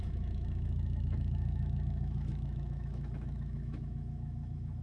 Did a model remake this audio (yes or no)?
yes